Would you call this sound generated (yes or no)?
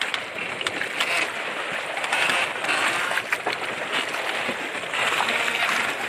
no